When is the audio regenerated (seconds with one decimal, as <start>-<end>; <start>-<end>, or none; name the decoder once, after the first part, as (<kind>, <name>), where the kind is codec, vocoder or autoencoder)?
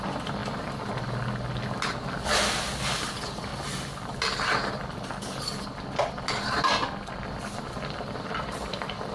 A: 0.0-0.4 (vocoder, BigVGAN v2); 2.9-3.5; 7.6-9.1